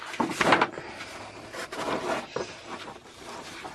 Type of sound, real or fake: real